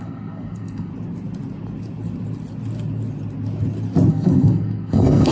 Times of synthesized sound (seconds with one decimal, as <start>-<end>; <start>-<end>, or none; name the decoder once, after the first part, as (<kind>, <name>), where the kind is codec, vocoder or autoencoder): 0.0-0.9 (codec, SNAC); 4.1-5.3